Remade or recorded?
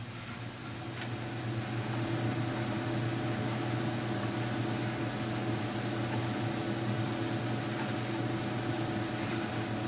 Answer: recorded